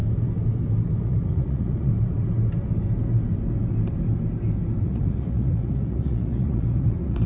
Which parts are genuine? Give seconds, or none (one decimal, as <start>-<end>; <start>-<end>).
0.0-1.0; 1.9-4.8